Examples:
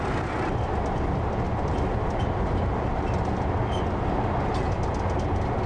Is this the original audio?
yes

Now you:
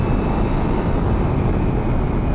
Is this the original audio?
yes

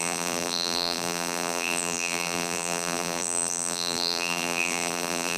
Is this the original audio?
no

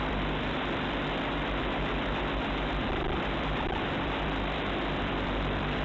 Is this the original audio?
no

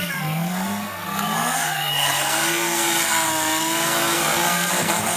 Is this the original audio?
no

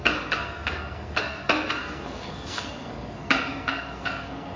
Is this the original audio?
no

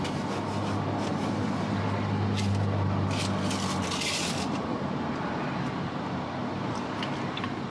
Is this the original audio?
yes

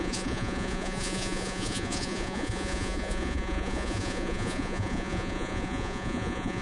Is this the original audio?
no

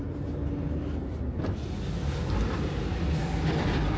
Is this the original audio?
yes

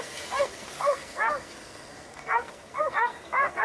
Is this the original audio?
no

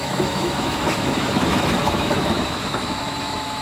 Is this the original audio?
no